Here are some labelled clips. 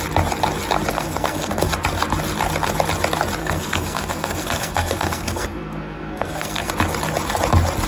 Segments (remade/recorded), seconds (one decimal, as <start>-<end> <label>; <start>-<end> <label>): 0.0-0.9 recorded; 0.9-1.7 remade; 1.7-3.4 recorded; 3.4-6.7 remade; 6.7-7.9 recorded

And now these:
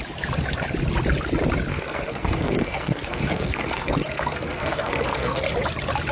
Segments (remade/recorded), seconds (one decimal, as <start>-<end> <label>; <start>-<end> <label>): 0.0-1.7 recorded; 1.7-5.4 remade; 5.4-6.1 recorded

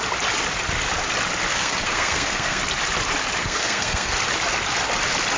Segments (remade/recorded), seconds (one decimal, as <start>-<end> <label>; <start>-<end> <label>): 0.0-1.5 recorded; 1.5-2.6 remade; 2.6-3.4 recorded; 3.4-4.1 remade; 4.1-5.4 recorded

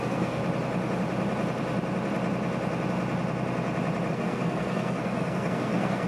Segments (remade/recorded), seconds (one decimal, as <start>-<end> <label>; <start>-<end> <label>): 0.0-0.4 remade; 0.4-4.1 recorded; 4.1-6.1 remade

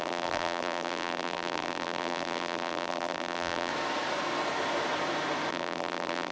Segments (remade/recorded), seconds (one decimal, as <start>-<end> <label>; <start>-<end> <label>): 0.0-3.7 remade; 3.7-5.5 recorded; 5.5-6.3 remade

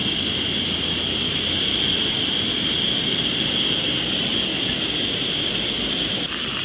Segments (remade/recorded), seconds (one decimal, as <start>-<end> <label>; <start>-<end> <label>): 0.0-2.8 recorded; 2.8-4.5 remade; 4.5-6.6 recorded

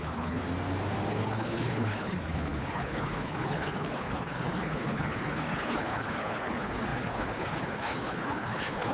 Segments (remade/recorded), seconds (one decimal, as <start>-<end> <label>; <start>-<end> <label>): 0.0-0.4 remade; 0.4-1.1 recorded; 1.1-8.9 remade